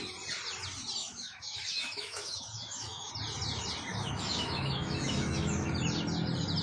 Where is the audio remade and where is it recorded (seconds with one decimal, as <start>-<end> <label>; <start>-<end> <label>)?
0.0-1.0 recorded; 1.0-3.1 remade; 3.1-3.9 recorded; 3.9-5.7 remade; 5.7-6.6 recorded